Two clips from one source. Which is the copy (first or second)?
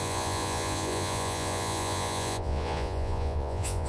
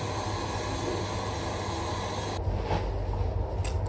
first